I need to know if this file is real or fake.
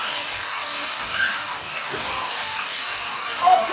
fake